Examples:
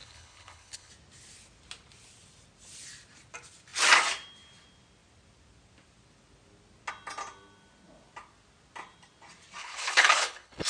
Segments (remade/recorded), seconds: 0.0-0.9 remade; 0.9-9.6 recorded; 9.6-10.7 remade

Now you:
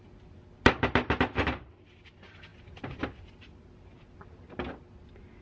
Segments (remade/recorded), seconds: 0.0-5.4 recorded

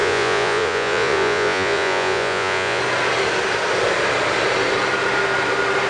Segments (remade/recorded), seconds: 0.0-2.8 remade; 2.8-5.9 recorded

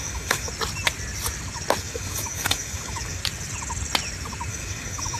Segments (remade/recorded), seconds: 0.0-0.5 remade; 0.5-1.8 recorded; 1.8-3.2 remade; 3.2-4.5 recorded; 4.5-5.2 remade

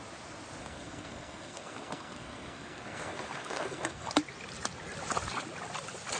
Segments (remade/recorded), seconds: 0.0-0.6 recorded; 0.6-4.1 remade; 4.1-6.2 recorded

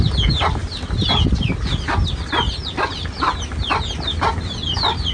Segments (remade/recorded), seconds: 0.0-5.1 recorded